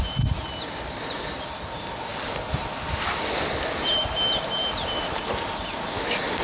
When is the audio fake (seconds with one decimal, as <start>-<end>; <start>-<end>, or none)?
none